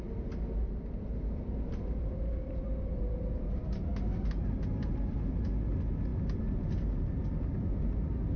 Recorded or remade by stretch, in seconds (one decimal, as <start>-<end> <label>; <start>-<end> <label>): 0.0-8.4 recorded